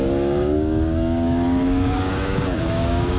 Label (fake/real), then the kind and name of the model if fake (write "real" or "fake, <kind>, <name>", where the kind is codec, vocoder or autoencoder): fake, codec, DAC